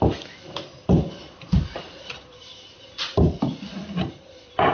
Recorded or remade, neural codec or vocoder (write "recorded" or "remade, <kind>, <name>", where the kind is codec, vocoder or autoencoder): recorded